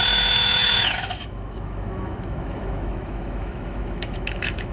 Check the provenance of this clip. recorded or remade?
remade